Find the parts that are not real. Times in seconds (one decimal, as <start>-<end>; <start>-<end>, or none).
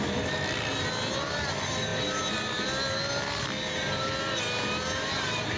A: none